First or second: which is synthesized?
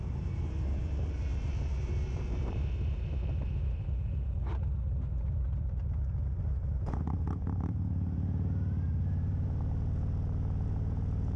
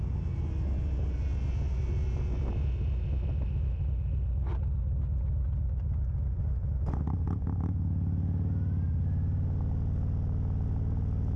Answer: first